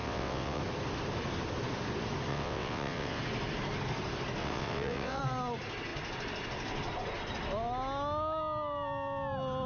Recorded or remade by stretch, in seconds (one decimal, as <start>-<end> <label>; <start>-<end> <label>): 0.0-0.6 remade; 0.6-2.3 recorded; 2.3-3.2 remade; 3.2-4.4 recorded; 4.4-5.2 remade; 5.2-9.7 recorded